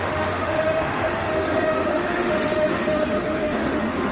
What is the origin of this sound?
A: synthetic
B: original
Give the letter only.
A